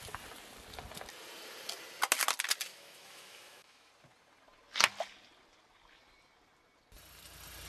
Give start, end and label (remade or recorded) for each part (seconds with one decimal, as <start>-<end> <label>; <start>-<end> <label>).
0.0-2.7 recorded; 2.7-3.9 remade; 3.9-7.7 recorded